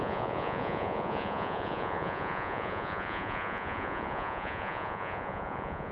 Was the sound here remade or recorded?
remade